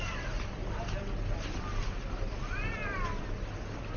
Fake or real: real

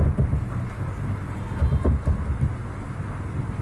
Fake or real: real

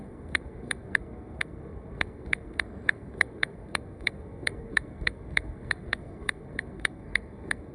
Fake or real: fake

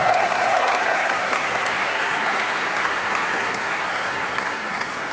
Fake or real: fake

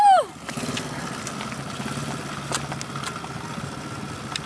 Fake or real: real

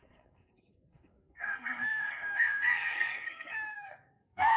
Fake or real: fake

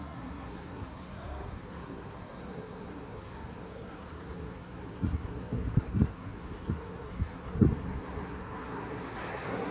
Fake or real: fake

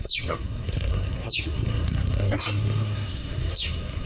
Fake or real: fake